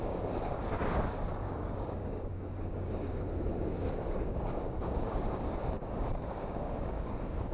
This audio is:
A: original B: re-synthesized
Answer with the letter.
B